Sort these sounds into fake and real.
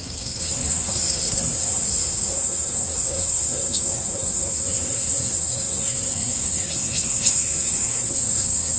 fake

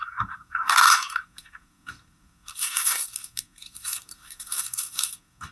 fake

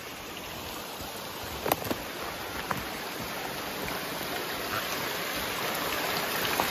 real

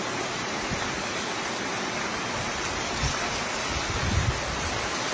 real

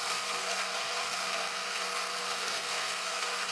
fake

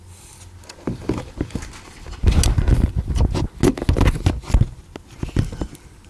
real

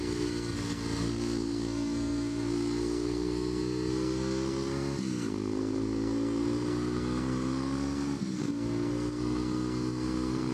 fake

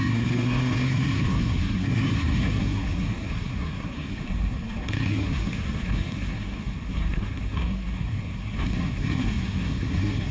fake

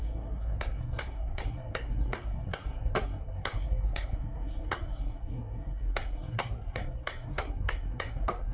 fake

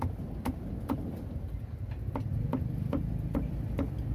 real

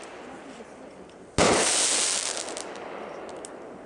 real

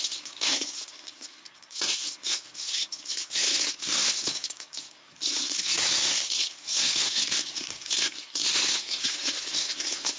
fake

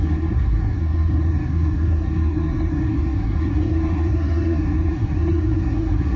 fake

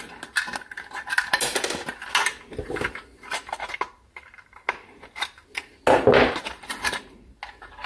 real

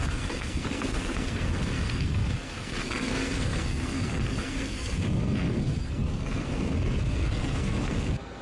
fake